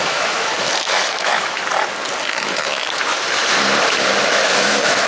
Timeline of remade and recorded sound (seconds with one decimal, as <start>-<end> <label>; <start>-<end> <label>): 0.0-1.6 remade; 1.6-2.2 recorded; 2.2-3.0 remade; 3.0-4.2 recorded; 4.2-5.1 remade